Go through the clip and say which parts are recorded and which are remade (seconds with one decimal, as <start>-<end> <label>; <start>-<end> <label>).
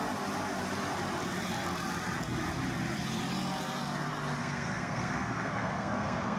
0.0-4.4 recorded; 4.4-6.4 remade